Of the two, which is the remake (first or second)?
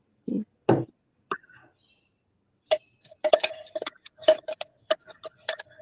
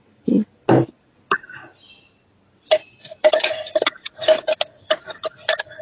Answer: first